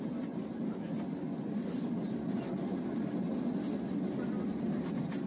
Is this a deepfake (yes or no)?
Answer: no